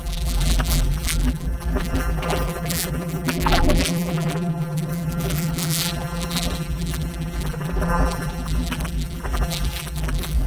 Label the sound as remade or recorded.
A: remade